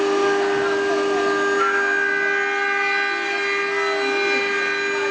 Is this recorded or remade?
recorded